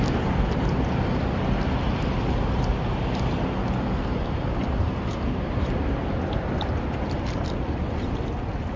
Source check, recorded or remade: recorded